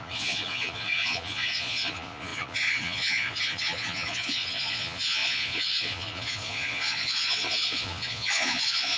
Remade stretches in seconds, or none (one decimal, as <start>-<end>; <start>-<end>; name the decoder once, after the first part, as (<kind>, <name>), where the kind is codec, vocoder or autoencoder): 0.0-9.0 (vocoder, Vocos)